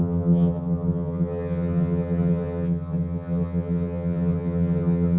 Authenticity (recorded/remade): remade